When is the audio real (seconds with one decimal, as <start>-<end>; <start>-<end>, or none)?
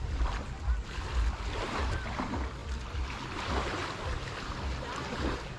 0.0-5.6